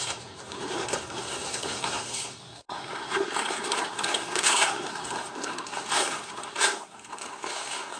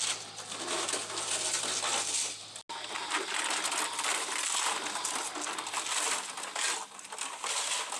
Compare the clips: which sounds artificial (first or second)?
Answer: first